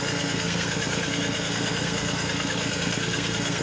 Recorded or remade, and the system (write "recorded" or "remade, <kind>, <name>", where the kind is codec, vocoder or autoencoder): remade, codec, SNAC